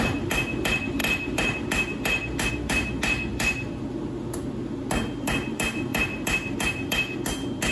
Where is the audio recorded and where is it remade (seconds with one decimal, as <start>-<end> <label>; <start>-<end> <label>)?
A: 0.0-7.7 recorded